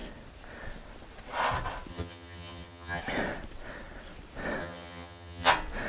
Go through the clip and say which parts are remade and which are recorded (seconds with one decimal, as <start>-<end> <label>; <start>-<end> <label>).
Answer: 0.0-1.9 recorded; 1.9-3.0 remade; 3.0-4.6 recorded; 4.6-5.5 remade; 5.5-5.9 recorded